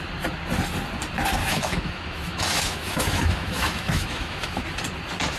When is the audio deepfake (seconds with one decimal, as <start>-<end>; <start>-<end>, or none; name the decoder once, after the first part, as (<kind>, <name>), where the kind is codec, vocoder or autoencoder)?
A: 1.4-4.6 (autoencoder, DAC-VAE)